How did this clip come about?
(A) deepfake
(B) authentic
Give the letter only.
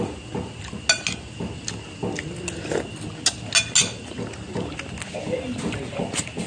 B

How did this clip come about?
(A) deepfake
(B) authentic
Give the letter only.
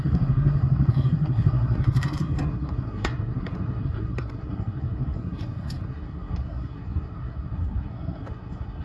A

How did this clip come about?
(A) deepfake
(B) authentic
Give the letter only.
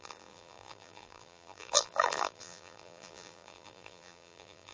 A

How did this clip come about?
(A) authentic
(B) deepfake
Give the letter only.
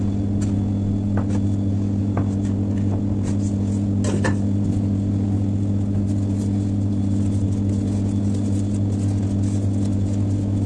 A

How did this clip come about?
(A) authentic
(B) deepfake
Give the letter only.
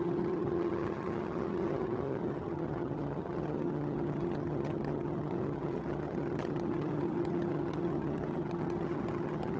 B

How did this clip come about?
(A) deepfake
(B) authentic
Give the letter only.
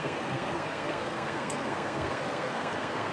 A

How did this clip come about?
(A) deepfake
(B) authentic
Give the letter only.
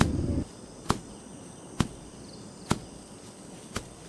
B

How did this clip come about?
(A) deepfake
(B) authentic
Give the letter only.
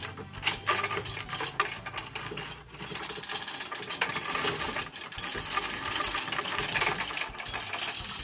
B